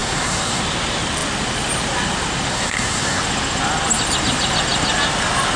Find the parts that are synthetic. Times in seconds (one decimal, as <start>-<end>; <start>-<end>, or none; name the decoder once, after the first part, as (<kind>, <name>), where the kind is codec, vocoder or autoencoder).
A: 0.0-0.6 (codec, SNAC); 2.5-3.2